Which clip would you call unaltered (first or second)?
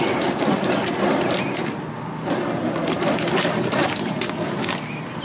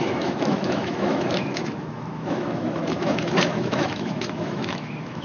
first